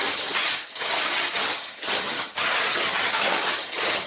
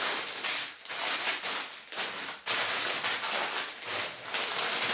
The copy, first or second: first